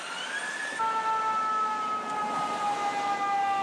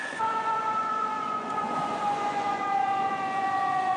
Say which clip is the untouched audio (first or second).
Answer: first